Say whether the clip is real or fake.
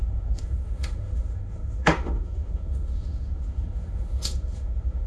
fake